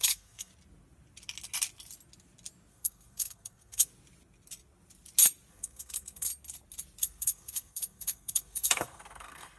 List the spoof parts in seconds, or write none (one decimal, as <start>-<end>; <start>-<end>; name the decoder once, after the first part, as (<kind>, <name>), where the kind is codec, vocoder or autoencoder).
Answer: 0.0-0.5 (codec, SNAC); 2.7-3.9; 5.5-6.3; 7.0-9.6